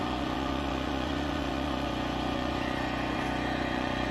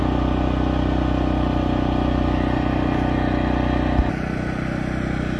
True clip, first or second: second